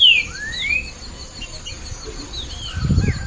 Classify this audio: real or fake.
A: real